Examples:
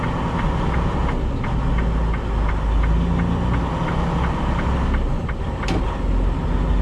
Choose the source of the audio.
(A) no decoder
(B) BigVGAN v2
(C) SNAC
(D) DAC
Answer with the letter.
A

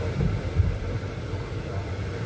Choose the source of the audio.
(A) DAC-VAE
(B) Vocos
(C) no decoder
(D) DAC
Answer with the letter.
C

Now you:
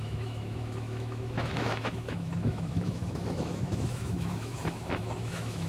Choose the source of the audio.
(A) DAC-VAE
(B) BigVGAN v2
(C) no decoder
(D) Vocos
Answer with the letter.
A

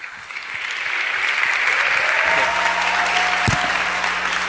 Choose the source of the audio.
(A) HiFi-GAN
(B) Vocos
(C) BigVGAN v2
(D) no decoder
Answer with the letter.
D